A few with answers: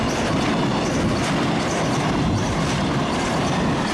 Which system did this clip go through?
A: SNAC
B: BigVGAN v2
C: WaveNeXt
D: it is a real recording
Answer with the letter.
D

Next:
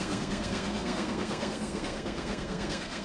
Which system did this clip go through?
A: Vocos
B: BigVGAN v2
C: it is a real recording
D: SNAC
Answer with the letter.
D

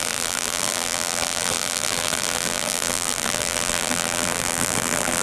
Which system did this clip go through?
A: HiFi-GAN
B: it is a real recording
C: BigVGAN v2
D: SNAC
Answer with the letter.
C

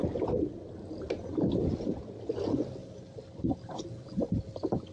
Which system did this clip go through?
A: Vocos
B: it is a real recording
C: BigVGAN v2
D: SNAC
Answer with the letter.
B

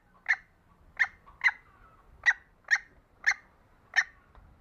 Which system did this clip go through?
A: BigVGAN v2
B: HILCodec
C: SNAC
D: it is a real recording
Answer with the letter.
D